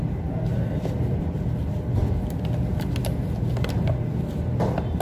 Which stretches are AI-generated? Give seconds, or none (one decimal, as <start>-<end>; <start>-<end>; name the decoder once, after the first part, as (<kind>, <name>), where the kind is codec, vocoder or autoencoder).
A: 0.5-1.2 (vocoder, BigVGAN v2)